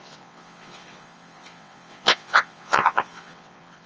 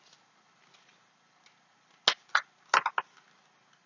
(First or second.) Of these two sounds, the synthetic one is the first